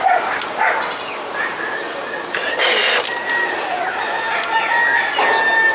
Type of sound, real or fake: real